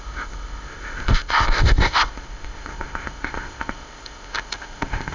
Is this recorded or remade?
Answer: remade